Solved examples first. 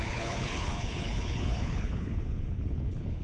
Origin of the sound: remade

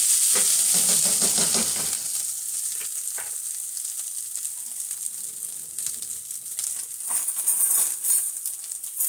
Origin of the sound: recorded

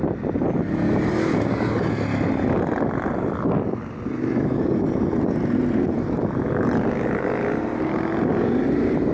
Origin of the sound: recorded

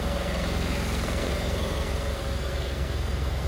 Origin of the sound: remade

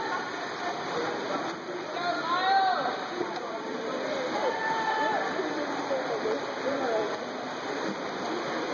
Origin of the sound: recorded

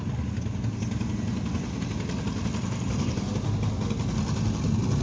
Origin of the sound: recorded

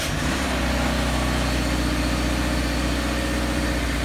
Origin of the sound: recorded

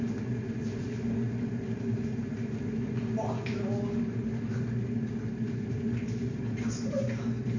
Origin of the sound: recorded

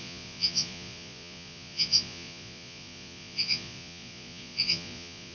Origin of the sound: remade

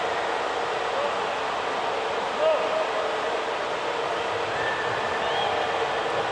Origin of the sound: recorded